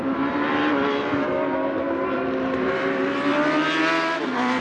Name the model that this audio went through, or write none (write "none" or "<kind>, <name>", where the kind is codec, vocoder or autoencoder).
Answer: vocoder, BigVGAN v2